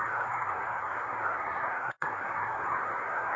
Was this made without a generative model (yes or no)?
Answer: no